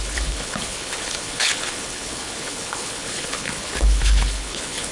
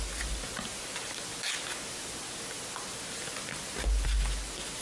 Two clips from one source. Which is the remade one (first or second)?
first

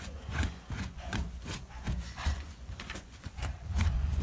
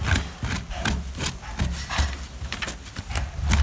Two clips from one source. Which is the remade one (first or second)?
first